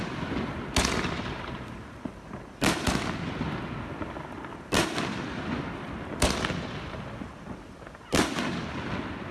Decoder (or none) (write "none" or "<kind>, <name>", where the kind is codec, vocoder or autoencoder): none